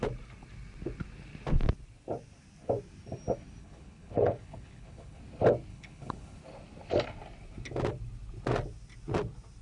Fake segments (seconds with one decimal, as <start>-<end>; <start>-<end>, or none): 3.6-5.2; 5.7-6.4